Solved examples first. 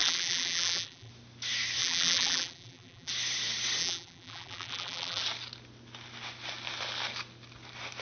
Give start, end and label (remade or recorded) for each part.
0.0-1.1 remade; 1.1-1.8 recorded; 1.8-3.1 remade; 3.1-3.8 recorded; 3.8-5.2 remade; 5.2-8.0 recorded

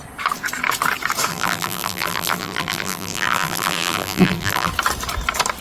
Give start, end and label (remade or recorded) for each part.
0.0-1.3 recorded; 1.3-4.7 remade; 4.7-5.6 recorded

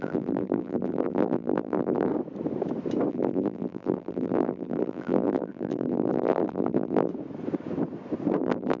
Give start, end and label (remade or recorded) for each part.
0.0-2.1 remade; 2.1-3.1 recorded; 3.1-7.1 remade; 7.1-8.4 recorded; 8.4-8.8 remade

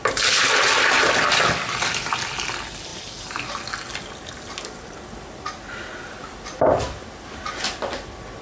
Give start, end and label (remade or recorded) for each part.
0.0-8.4 recorded

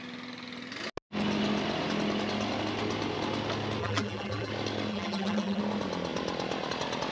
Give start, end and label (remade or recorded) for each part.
0.0-3.8 recorded; 3.8-4.5 remade; 4.5-4.9 recorded; 4.9-5.6 remade; 5.6-7.1 recorded

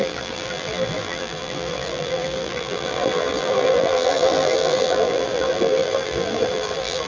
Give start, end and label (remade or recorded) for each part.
0.0-7.1 remade

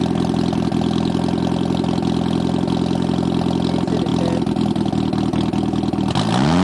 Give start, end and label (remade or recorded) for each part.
0.0-6.6 recorded